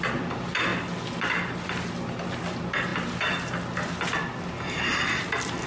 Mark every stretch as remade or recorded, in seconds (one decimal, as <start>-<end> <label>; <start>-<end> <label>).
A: 0.0-5.7 recorded